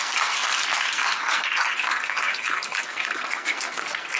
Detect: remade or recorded remade